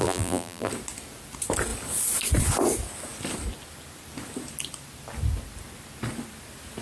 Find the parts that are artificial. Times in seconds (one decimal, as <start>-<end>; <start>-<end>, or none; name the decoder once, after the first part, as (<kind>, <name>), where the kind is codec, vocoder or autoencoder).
0.0-0.7 (vocoder, BigVGAN v2)